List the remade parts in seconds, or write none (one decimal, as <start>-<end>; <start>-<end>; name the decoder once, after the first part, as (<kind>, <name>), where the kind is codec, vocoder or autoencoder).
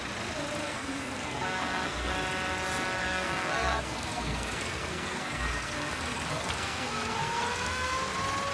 0.6-2.1 (codec, SNAC); 3.0-8.1